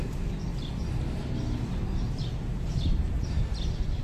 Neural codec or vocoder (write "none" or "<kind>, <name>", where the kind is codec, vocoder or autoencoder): none